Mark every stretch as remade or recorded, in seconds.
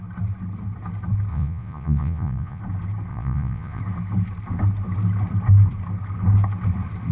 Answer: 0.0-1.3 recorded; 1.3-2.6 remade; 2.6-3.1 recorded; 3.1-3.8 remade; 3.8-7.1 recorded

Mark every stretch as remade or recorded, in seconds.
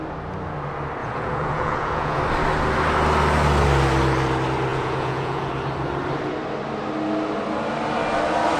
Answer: 0.0-1.0 recorded; 1.0-2.2 remade; 2.2-4.7 recorded; 4.7-5.5 remade; 5.5-8.6 recorded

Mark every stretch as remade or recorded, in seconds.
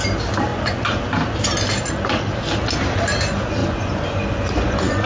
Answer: 0.0-0.5 recorded; 0.5-1.0 remade; 1.0-3.6 recorded; 3.6-5.1 remade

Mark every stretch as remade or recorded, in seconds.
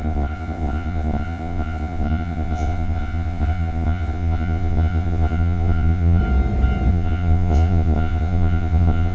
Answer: 0.0-6.2 remade; 6.2-6.9 recorded; 6.9-9.1 remade